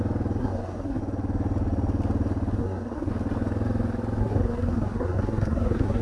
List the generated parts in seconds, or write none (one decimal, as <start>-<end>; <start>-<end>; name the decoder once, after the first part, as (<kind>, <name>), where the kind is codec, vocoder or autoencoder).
0.4-1.0 (codec, SNAC); 2.6-3.1; 4.2-6.0